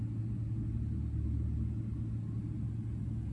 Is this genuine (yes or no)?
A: yes